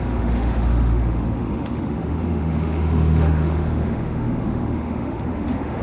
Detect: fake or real fake